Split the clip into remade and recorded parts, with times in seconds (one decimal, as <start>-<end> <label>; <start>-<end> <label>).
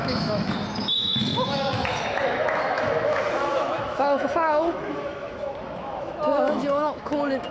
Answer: 0.0-7.5 remade